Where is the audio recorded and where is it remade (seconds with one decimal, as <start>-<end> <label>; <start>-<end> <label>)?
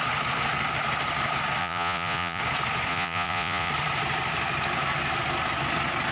0.0-1.6 recorded; 1.6-2.4 remade; 2.4-2.9 recorded; 2.9-3.7 remade; 3.7-6.1 recorded